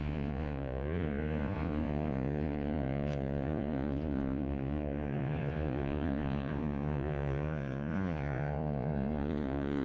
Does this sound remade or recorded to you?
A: remade